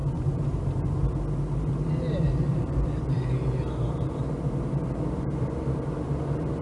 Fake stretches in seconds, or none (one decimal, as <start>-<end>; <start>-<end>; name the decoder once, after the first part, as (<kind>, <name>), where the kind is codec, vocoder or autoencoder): 2.3-6.6 (vocoder, BigVGAN v2)